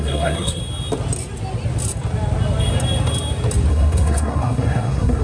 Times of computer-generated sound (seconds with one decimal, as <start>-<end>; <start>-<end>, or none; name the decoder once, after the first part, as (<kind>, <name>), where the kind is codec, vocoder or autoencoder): 0.0-0.6 (codec, SNAC); 3.7-5.2